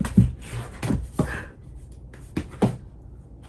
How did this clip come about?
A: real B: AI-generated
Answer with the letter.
A